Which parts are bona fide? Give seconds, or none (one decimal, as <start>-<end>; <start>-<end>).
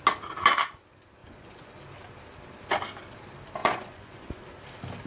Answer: 0.0-1.2; 1.8-3.6; 4.4-5.1